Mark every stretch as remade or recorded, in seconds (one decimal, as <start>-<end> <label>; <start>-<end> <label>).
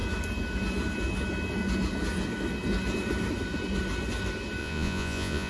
0.0-4.6 recorded; 4.6-5.5 remade